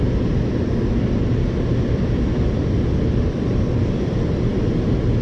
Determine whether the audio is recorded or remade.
recorded